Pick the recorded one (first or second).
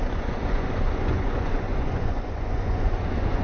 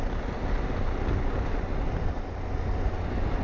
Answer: second